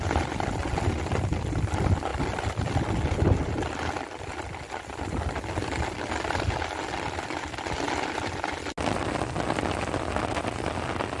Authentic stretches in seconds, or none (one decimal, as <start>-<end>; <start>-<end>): 0.0-11.2